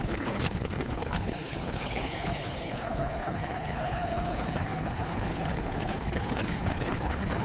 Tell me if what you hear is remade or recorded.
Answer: remade